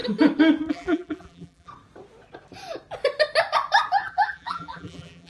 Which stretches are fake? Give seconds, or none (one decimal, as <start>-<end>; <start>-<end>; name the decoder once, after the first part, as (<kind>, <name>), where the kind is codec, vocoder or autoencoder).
0.7-1.7 (vocoder, BigVGAN v2); 4.1-5.3